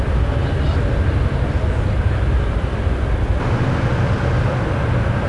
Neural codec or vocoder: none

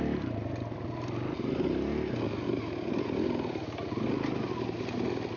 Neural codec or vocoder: none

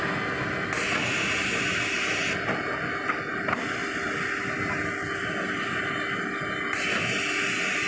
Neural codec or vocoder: none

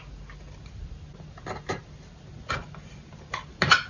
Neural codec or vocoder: none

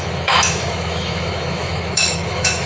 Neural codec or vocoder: autoencoder, DAC-VAE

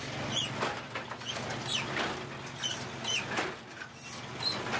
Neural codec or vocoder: none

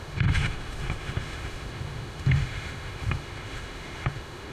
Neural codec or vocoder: autoencoder, DAC-VAE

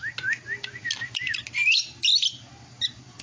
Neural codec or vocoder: none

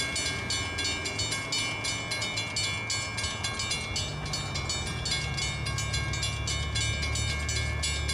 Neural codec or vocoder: none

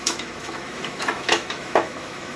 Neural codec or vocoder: autoencoder, DAC-VAE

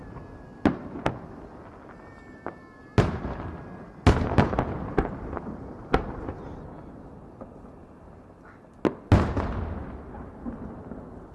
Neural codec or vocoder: none